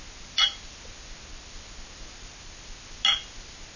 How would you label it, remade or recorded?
recorded